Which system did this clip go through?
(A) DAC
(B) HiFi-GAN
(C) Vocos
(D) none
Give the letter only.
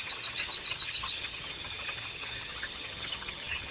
B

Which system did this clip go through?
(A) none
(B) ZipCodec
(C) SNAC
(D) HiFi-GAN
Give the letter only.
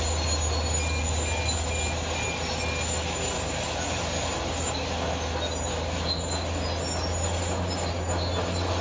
A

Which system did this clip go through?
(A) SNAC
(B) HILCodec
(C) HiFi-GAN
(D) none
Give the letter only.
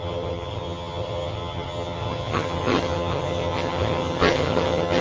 C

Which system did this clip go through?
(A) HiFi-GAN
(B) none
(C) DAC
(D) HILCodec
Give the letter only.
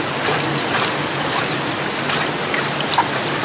B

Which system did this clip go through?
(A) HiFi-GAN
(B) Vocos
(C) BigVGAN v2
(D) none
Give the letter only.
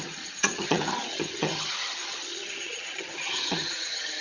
A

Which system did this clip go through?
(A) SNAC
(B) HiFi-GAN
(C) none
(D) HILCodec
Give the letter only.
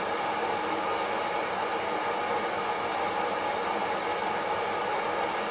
C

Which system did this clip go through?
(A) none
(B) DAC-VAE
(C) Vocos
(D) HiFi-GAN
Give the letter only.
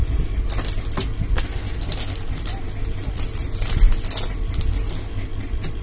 A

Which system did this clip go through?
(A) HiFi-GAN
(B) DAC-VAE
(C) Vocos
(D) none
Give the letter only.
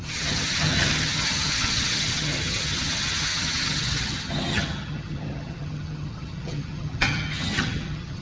A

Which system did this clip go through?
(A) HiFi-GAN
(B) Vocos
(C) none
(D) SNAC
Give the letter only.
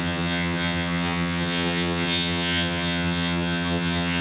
A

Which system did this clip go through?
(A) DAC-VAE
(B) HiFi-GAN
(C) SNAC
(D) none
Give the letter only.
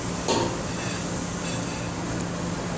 D